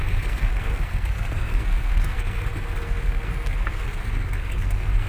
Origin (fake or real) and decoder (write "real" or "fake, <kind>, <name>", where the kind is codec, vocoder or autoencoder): fake, codec, SNAC